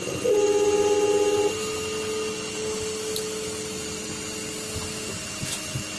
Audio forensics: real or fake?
real